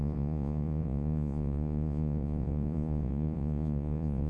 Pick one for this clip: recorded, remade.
remade